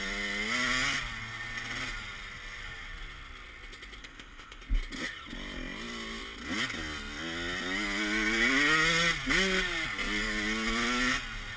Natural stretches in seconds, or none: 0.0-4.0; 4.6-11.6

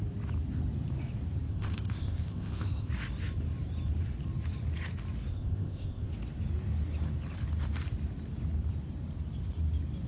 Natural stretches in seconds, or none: 0.0-1.5; 2.9-5.3; 6.1-10.1

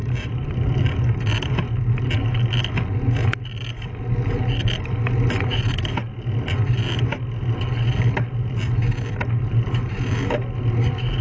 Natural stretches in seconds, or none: 0.0-11.2

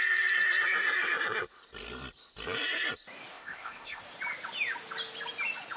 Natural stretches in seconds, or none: 0.0-3.3; 4.0-5.8

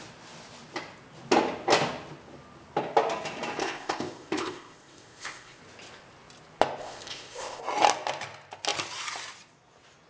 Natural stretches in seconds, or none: 0.0-3.6; 5.6-6.8; 7.6-10.1

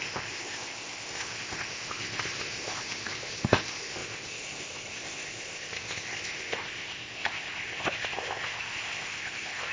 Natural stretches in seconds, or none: none

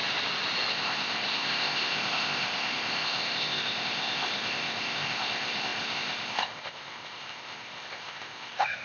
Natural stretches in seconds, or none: 0.0-0.7

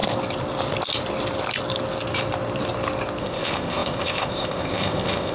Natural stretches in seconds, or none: 0.0-3.2